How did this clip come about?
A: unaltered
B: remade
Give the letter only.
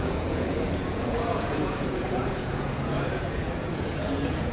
B